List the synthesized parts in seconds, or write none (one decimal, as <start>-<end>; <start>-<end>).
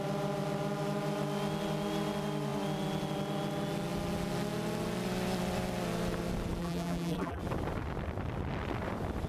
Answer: 6.6-7.4